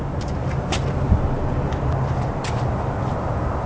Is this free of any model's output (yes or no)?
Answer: yes